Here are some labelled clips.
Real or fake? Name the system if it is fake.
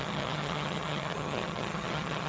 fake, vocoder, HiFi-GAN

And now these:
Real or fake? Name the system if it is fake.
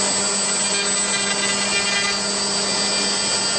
real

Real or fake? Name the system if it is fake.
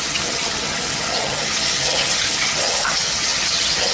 fake, vocoder, HiFi-GAN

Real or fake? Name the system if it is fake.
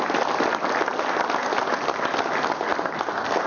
real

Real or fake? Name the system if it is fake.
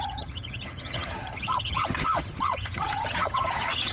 fake, vocoder, HiFi-GAN